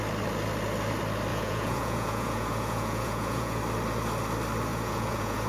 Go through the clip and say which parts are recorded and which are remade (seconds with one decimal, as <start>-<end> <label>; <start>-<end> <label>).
0.0-1.3 recorded; 1.3-3.6 remade; 3.6-4.7 recorded; 4.7-5.5 remade